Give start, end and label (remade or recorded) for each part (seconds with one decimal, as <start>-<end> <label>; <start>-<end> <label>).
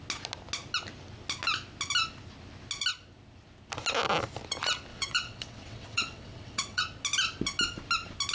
0.0-4.9 recorded; 4.9-6.8 remade; 6.8-8.3 recorded